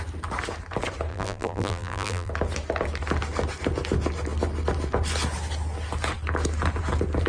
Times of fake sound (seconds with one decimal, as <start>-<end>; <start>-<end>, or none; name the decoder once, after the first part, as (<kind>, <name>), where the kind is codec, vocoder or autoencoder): 1.1-2.3 (vocoder, BigVGAN v2)